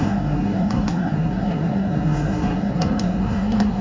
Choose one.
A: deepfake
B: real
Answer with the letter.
A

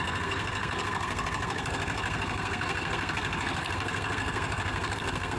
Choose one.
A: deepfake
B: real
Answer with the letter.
A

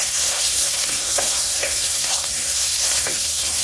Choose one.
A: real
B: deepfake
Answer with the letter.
B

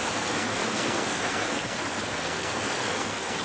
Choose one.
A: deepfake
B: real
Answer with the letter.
A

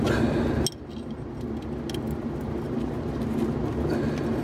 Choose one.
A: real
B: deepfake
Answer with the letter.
A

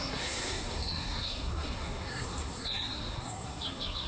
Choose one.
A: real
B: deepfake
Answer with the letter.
B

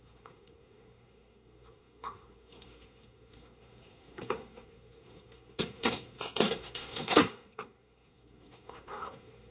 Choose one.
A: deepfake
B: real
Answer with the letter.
A